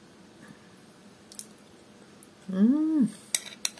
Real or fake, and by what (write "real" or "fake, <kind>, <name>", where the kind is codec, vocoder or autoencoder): real